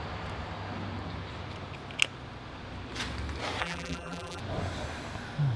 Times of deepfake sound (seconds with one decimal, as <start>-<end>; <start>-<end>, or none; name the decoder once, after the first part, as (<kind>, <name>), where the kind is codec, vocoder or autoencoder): 3.6-4.4 (vocoder, BigVGAN v2)